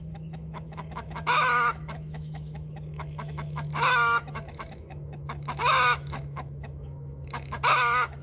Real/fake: fake